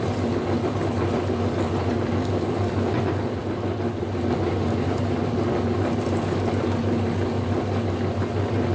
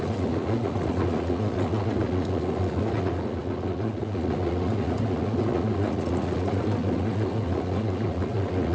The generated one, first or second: second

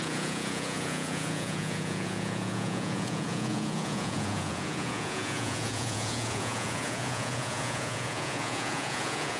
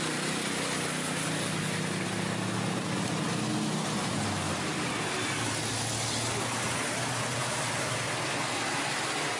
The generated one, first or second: first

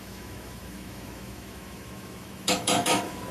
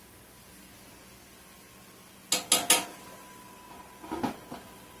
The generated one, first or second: first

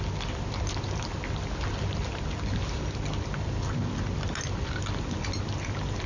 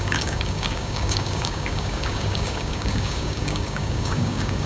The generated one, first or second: second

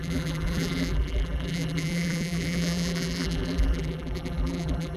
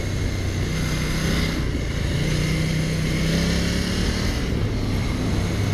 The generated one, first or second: first